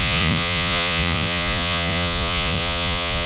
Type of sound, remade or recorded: remade